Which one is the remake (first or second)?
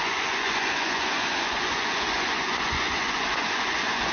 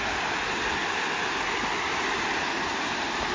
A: first